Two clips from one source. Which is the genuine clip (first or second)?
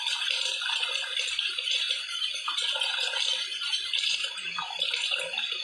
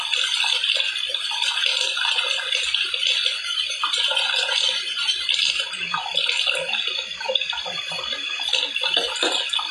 second